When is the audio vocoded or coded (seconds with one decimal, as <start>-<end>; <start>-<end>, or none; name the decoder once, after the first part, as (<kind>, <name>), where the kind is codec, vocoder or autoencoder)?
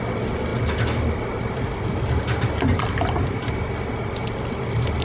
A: none